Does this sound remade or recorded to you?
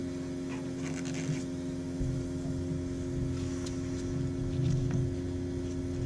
recorded